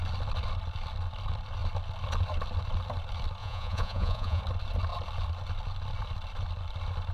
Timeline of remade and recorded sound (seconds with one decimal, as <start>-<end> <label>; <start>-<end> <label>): 0.0-3.4 recorded; 3.4-4.4 remade; 4.4-7.1 recorded